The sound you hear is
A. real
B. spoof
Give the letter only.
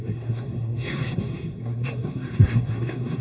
B